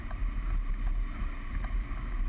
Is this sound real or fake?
fake